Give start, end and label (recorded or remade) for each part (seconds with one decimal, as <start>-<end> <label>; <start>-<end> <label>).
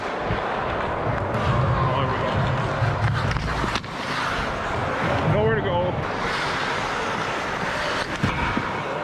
0.0-9.0 recorded